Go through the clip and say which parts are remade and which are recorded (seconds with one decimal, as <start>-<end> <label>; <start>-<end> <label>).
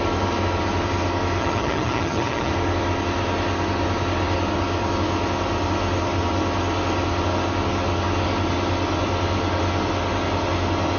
0.0-1.4 recorded; 1.4-2.5 remade; 2.5-11.0 recorded